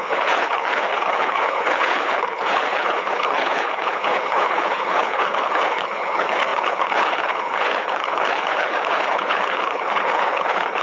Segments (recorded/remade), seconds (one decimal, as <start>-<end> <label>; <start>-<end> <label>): 0.0-10.8 remade